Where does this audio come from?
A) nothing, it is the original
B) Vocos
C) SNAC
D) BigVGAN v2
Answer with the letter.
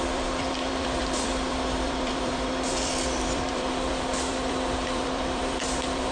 D